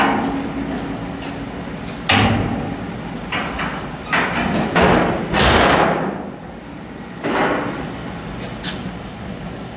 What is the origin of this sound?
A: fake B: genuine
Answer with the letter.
B